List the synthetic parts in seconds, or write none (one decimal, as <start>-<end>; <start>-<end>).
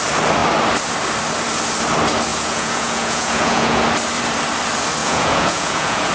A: 2.3-3.8; 5.0-6.1